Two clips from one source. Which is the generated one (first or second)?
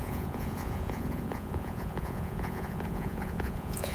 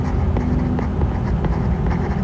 first